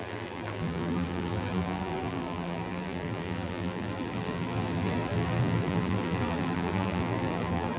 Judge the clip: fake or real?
fake